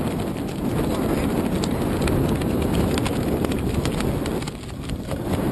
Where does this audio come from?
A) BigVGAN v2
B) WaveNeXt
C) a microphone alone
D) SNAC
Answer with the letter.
C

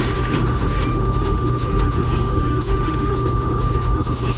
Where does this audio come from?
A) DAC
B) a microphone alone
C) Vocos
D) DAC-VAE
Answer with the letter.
D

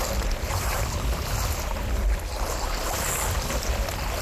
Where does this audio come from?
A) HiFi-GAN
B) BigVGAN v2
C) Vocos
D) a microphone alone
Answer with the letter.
D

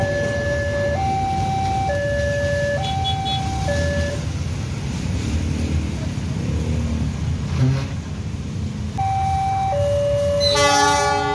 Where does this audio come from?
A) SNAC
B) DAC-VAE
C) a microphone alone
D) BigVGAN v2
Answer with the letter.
C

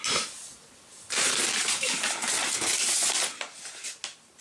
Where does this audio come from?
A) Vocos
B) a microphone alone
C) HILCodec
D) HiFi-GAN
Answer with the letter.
B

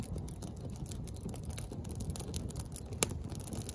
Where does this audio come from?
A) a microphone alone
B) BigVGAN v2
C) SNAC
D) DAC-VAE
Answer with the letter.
A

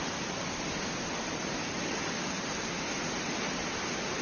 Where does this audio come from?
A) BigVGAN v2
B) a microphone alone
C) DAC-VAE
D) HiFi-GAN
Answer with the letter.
B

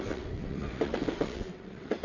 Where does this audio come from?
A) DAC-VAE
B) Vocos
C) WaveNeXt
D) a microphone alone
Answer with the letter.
C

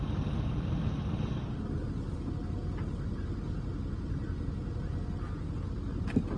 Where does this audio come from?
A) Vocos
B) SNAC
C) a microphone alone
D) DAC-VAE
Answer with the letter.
C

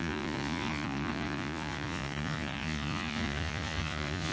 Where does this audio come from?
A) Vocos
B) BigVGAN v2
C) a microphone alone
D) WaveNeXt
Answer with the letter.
A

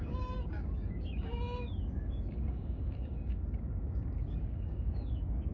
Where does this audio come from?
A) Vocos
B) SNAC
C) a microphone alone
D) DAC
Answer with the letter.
D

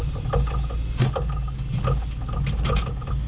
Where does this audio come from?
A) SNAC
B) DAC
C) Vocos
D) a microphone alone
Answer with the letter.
D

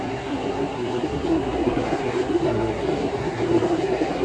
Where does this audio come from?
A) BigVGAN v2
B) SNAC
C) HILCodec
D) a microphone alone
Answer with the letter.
B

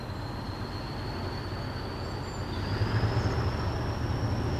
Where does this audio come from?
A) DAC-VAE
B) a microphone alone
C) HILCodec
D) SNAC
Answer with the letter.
B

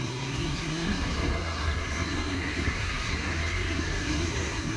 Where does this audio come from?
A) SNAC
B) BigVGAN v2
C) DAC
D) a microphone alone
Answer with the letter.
A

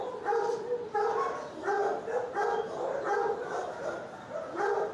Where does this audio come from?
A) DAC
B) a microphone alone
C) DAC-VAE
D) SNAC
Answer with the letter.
B